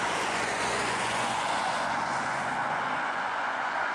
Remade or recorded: remade